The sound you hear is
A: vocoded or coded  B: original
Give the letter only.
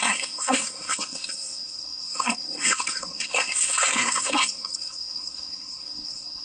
A